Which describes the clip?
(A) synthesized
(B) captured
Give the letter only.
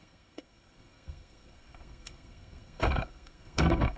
A